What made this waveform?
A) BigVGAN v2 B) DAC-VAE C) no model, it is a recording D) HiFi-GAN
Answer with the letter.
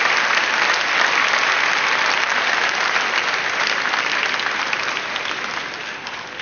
C